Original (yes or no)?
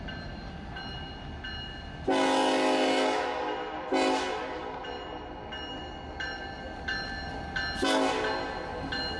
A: yes